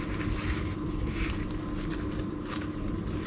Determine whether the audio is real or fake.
real